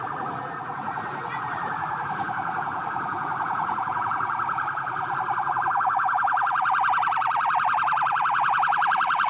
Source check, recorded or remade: remade